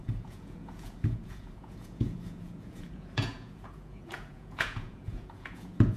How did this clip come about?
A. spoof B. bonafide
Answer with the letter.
A